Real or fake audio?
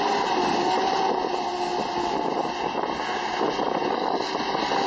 real